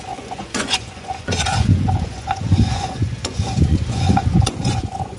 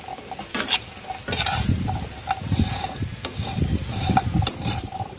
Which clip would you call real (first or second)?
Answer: second